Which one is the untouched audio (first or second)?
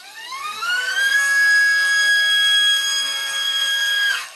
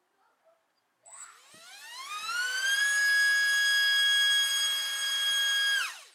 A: second